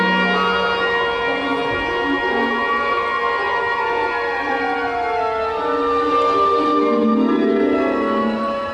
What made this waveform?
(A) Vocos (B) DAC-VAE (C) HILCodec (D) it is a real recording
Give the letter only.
D